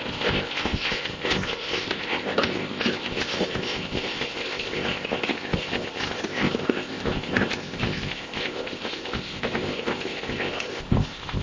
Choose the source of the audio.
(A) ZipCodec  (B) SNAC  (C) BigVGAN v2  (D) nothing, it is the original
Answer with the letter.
A